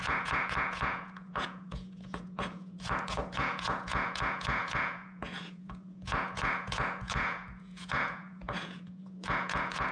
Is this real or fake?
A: fake